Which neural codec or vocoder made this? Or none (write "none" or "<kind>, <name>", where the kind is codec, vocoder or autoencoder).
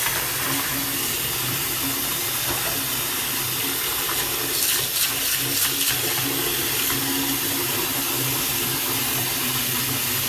none